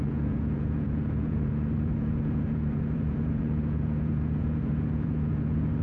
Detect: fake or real fake